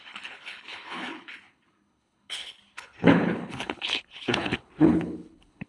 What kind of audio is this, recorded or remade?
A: remade